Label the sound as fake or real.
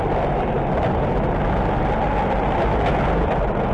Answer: real